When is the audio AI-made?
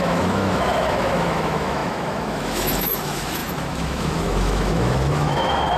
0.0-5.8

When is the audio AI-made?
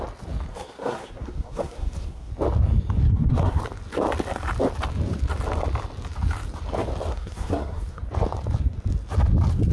0.5-2.3; 3.0-3.6; 7.1-8.0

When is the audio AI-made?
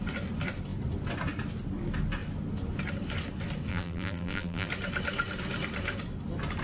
3.7-4.7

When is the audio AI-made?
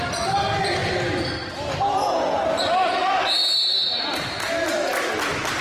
0.8-2.6